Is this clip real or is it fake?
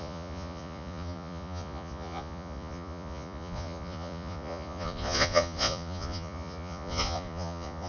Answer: fake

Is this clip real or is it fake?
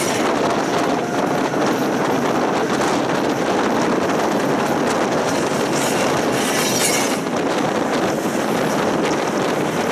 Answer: real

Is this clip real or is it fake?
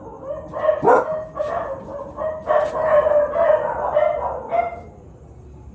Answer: real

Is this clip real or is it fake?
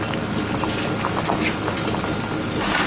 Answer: real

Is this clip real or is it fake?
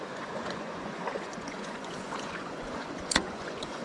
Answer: fake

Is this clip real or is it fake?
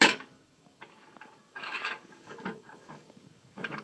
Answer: fake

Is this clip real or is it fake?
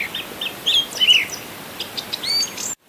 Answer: real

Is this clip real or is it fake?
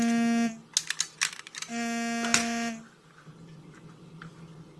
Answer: real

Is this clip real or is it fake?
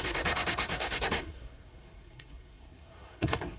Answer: fake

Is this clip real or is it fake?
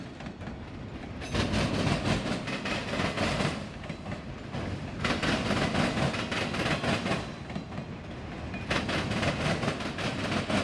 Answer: real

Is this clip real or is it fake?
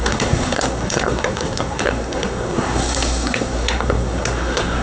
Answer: fake